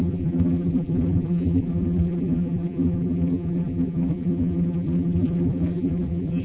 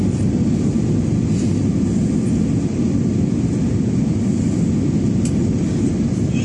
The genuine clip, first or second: second